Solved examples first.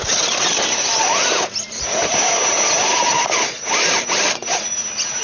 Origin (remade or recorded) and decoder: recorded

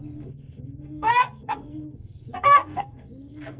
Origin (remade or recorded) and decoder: remade, codec, SNAC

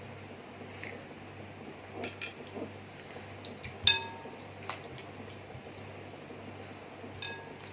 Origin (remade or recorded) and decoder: recorded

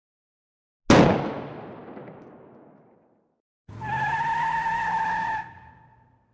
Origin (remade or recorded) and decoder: recorded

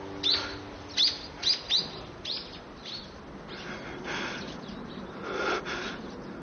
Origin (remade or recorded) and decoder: recorded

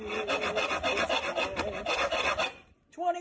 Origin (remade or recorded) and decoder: recorded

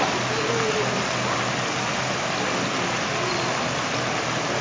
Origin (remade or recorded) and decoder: recorded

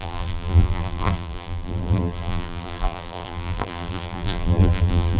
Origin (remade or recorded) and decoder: remade, vocoder, BigVGAN v2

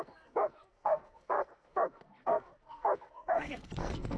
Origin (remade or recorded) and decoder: remade, codec, SNAC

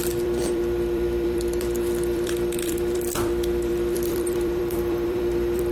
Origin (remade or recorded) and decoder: remade, vocoder, BigVGAN v2